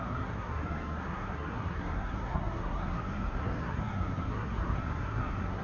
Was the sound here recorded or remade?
remade